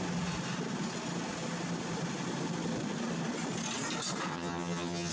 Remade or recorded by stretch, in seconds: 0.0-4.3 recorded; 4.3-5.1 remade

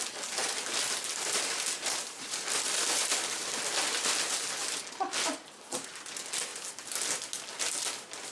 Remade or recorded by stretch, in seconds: 0.0-0.4 recorded; 0.4-4.3 remade; 4.3-8.3 recorded

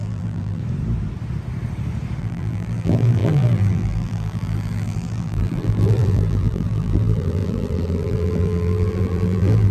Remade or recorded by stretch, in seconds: 0.0-0.6 remade; 0.6-2.2 recorded; 2.2-9.7 remade

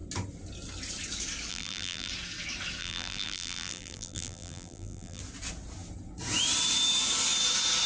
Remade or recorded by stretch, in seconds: 0.0-1.5 recorded; 1.5-2.1 remade; 2.1-2.8 recorded; 2.8-5.2 remade; 5.2-7.9 recorded

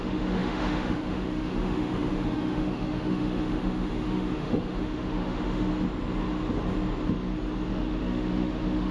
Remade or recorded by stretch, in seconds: 0.0-5.7 remade; 5.7-7.7 recorded; 7.7-8.9 remade

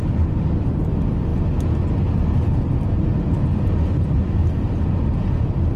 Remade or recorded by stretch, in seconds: 0.0-5.8 recorded